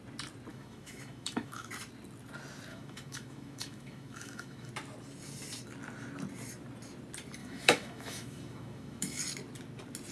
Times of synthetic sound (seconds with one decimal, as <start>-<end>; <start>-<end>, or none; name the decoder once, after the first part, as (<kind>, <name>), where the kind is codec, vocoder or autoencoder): 0.5-1.7 (autoencoder, DAC-VAE); 2.7-4.7; 7.4-9.2